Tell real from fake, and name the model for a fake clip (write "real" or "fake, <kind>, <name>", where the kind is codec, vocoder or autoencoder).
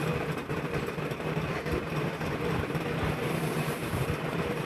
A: fake, vocoder, BigVGAN v2